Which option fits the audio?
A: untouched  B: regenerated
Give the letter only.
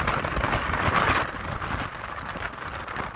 A